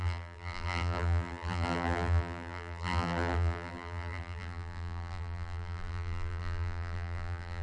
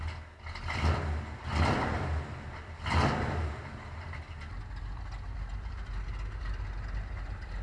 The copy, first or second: first